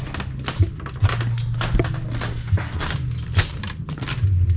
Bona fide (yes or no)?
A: yes